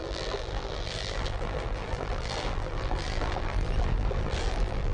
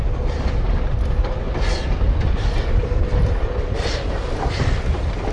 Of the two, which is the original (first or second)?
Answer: second